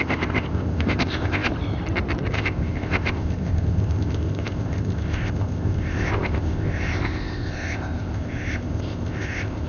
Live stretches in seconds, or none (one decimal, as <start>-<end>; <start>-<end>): 1.5-2.3